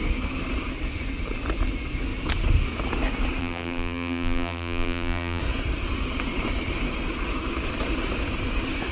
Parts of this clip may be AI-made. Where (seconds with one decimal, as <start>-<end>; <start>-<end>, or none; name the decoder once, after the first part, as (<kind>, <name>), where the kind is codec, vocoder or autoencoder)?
3.4-5.4 (vocoder, BigVGAN v2)